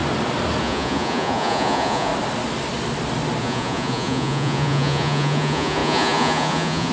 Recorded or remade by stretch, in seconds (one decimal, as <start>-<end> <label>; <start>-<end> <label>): 0.0-0.6 recorded; 0.6-2.1 remade; 2.1-3.4 recorded; 3.4-6.9 remade